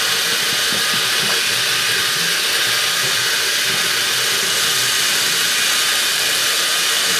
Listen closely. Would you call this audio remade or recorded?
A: recorded